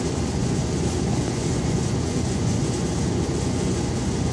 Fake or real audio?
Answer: fake